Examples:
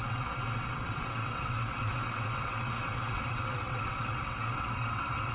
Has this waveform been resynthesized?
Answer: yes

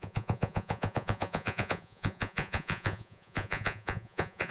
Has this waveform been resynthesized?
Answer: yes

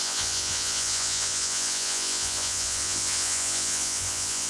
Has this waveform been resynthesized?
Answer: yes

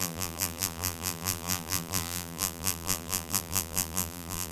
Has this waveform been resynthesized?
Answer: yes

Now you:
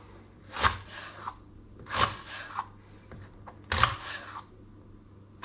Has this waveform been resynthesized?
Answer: no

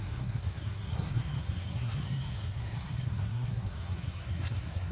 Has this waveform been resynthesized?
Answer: yes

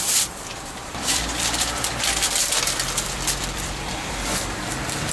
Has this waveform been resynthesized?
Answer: yes